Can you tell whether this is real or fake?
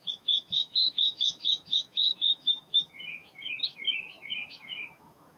fake